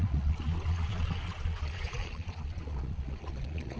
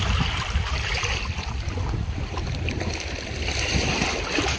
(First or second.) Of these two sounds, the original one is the second